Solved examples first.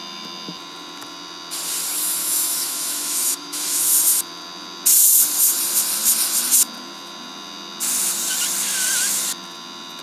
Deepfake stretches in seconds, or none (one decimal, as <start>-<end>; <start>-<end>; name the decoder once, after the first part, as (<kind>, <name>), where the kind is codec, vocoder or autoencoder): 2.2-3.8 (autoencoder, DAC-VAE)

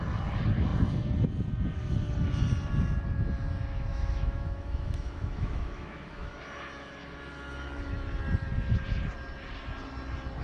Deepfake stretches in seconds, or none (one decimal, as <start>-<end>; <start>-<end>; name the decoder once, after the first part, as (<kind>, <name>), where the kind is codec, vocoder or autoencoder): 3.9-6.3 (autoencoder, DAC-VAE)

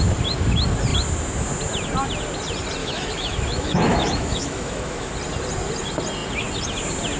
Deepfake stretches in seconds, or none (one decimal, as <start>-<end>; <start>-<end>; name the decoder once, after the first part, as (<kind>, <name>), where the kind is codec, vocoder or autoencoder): 2.8-5.1 (autoencoder, DAC-VAE)

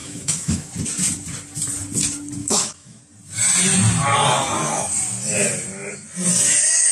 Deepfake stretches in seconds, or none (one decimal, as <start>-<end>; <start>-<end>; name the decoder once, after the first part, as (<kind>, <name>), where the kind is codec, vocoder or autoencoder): 0.0-0.7 (autoencoder, DAC-VAE); 2.4-3.0

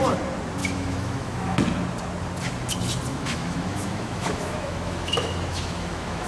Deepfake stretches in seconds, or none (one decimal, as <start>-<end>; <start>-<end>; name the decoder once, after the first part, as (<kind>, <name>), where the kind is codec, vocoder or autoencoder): 0.6-1.6 (autoencoder, DAC-VAE); 3.1-6.3